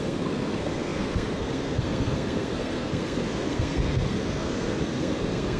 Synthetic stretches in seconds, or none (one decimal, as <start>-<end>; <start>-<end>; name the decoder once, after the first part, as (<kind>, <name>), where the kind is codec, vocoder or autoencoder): 0.0-5.6 (codec, SNAC)